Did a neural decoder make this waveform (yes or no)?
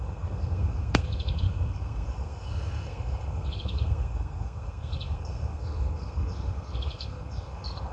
yes